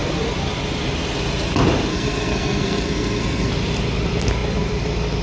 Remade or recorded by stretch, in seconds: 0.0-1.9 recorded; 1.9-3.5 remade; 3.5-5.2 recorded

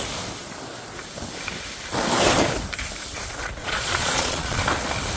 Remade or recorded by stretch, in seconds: 0.0-3.6 recorded; 3.6-4.6 remade; 4.6-5.2 recorded